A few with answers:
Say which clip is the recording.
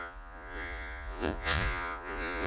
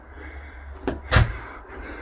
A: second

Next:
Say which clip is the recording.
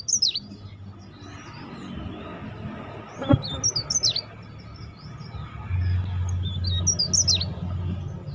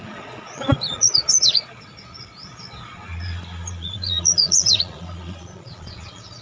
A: first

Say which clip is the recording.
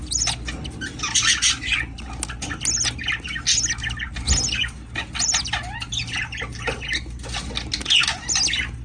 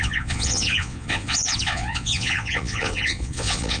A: first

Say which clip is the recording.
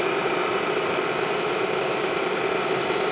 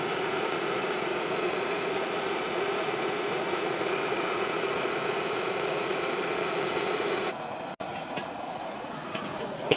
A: first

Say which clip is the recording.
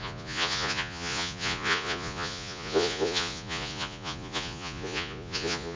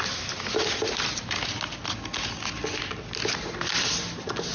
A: second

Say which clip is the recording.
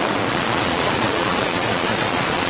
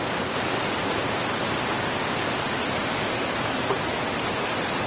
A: second